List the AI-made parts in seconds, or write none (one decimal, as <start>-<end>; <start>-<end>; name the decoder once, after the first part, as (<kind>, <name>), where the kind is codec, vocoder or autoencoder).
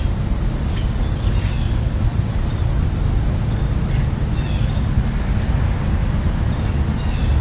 none